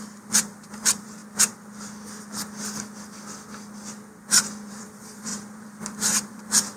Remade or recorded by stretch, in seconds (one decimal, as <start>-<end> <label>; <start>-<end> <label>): 0.0-1.2 remade; 1.2-4.7 recorded; 4.7-6.8 remade